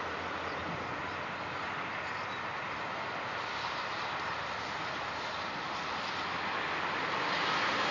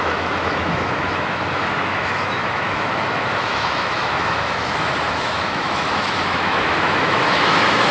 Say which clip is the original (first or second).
first